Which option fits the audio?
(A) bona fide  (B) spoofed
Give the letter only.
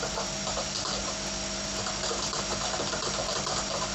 B